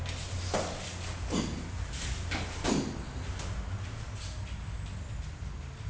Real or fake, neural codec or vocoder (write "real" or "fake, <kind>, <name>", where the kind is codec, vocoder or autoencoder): real